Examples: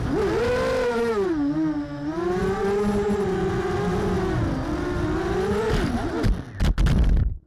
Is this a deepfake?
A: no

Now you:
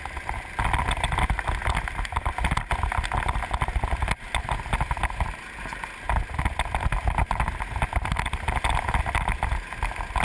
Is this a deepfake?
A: no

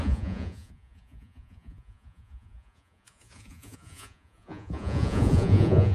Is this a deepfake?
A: yes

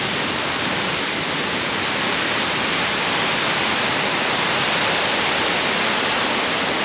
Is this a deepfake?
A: no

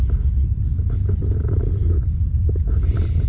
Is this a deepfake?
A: no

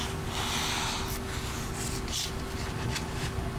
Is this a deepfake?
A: no